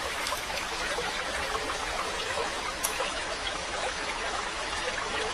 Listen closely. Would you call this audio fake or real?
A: fake